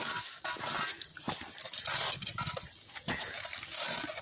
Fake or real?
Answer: real